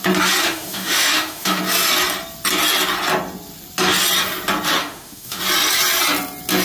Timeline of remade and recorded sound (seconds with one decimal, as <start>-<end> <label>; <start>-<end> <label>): 0.0-0.4 recorded; 0.4-1.6 remade; 1.6-4.8 recorded; 4.8-5.4 remade; 5.4-6.6 recorded